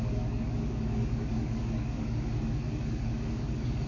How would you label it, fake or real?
fake